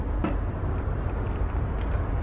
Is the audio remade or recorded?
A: recorded